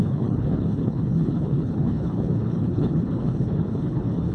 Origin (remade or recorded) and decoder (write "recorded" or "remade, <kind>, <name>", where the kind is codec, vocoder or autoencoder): remade, codec, HILCodec